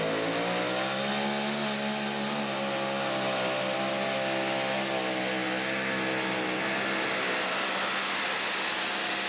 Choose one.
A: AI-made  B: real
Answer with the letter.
B